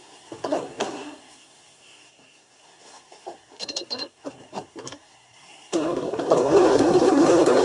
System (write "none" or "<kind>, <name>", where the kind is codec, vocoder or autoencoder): codec, SNAC